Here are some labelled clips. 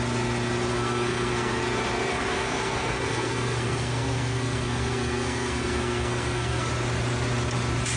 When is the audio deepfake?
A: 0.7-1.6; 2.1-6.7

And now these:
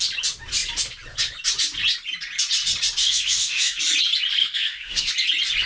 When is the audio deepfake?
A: 3.0-3.8; 4.4-5.1